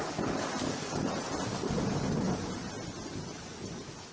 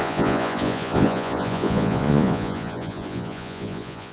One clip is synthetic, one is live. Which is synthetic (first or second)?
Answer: second